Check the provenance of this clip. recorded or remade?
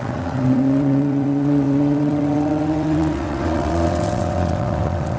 remade